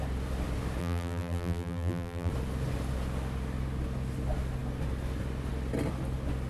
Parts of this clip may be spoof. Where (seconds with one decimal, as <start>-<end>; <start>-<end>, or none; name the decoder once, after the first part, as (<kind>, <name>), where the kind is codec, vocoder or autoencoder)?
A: 0.8-2.3 (vocoder, BigVGAN v2)